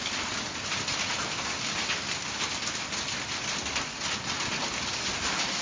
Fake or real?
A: real